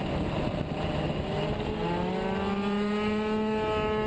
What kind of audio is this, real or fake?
real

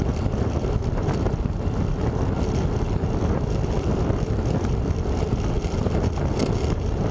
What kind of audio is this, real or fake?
real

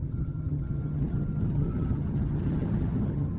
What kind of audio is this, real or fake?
fake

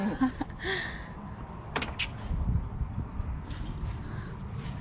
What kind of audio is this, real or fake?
real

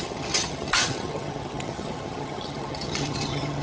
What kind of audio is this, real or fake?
fake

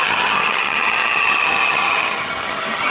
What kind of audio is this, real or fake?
fake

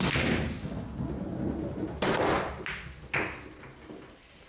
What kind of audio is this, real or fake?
real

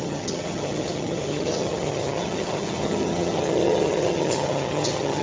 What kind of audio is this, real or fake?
fake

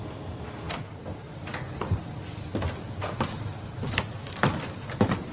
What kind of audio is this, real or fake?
real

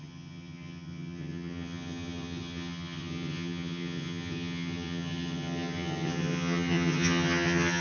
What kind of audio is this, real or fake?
fake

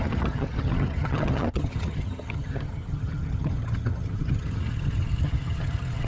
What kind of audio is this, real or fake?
fake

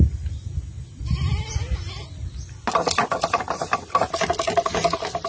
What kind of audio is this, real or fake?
real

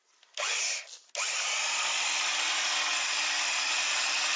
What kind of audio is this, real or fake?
real